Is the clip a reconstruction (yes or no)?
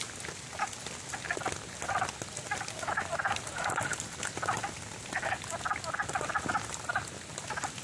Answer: no